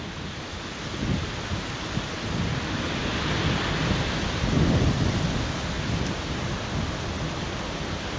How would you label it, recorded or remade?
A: recorded